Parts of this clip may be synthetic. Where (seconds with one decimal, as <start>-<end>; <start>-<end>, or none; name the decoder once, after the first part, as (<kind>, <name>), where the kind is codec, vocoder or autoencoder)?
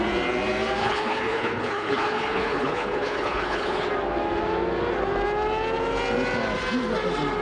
0.8-3.9 (codec, HILCodec)